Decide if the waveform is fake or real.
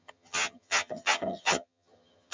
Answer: fake